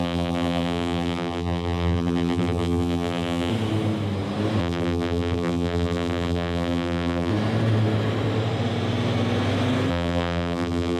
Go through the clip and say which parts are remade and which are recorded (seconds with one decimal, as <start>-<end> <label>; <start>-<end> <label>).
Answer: 0.0-3.5 remade; 3.5-4.6 recorded; 4.6-7.3 remade; 7.3-9.9 recorded; 9.9-11.0 remade